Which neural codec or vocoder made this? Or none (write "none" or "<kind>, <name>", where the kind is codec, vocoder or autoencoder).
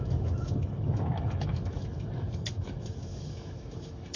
autoencoder, DAC-VAE